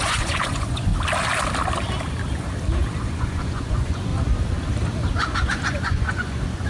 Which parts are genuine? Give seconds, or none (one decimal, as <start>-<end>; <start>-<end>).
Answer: 0.9-3.0; 4.1-5.1